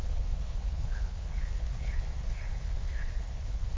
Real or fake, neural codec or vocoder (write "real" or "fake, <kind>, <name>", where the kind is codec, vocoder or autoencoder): fake, codec, HILCodec